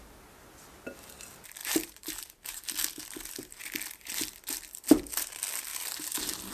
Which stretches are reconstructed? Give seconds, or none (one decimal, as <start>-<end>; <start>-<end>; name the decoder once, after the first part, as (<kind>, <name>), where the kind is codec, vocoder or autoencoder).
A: 1.6-2.7 (vocoder, BigVGAN v2); 5.7-6.5